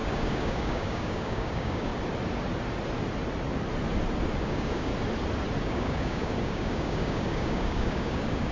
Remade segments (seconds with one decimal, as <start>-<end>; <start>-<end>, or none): 0.0-1.9; 4.4-4.9; 5.6-8.5